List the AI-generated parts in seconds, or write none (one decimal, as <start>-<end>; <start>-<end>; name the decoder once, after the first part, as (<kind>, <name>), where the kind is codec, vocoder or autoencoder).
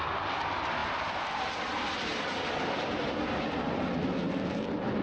none